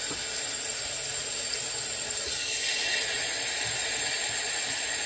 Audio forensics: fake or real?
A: real